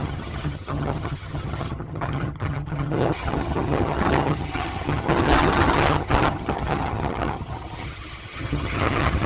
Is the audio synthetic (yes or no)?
yes